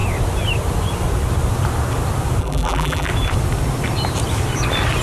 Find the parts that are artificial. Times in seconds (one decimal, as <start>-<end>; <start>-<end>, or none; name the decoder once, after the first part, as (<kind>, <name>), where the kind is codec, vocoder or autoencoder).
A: 2.4-3.1 (vocoder, BigVGAN v2)